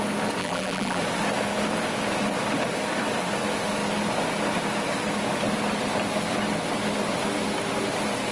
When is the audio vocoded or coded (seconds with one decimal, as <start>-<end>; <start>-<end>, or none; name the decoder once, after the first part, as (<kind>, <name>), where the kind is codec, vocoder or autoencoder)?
0.4-1.0 (vocoder, BigVGAN v2)